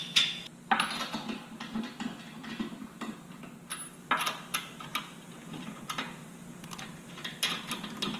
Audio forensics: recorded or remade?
recorded